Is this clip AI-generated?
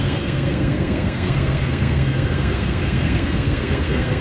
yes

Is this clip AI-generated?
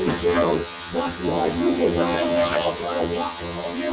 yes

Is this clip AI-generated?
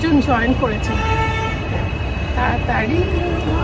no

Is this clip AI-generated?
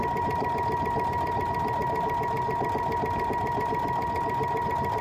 no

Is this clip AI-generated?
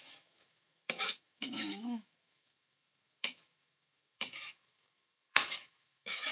yes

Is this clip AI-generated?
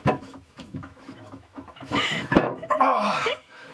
yes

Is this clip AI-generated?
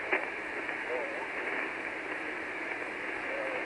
no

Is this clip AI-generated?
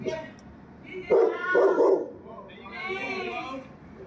no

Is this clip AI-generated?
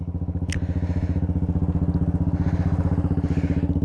no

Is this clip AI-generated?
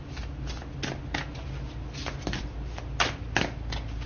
no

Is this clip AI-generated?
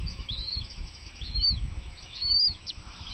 yes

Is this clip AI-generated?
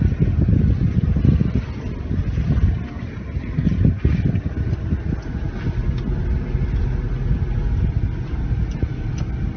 no